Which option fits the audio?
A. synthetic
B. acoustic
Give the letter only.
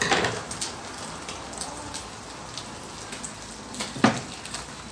B